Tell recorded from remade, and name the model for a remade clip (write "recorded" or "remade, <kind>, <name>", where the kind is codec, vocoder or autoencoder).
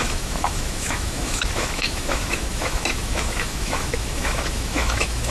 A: remade, autoencoder, DAC-VAE